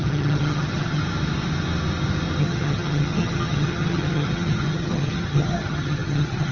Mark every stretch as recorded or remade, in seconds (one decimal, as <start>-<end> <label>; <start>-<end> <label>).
0.0-1.0 remade; 1.0-2.4 recorded; 2.4-6.5 remade